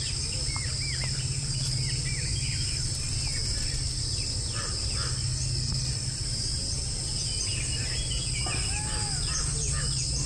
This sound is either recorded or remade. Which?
recorded